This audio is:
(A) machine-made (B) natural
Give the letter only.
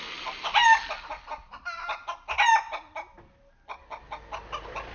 B